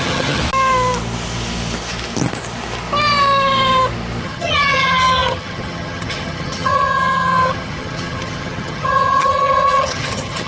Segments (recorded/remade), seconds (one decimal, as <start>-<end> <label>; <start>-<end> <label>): 0.0-0.4 remade; 0.4-4.2 recorded; 4.2-10.5 remade